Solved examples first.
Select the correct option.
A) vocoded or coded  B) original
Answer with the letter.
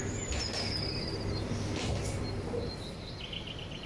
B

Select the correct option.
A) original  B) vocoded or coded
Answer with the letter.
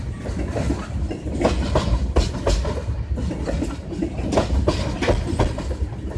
A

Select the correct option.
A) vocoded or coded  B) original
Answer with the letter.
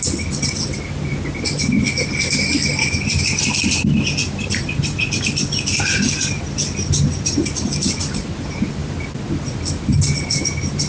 B